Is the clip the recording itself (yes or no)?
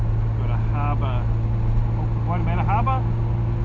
yes